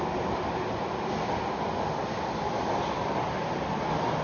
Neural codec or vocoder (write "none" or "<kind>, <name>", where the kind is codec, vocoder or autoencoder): none